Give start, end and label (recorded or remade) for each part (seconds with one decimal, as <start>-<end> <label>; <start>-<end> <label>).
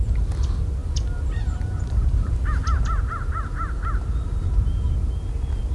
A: 0.0-5.7 recorded